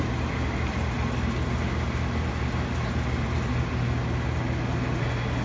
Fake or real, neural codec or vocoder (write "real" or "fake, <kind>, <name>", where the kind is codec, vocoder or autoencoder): real